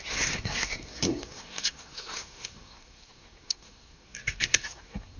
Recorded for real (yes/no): no